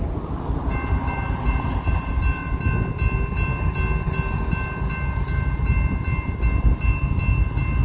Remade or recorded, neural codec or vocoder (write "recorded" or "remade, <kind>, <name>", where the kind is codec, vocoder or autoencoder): recorded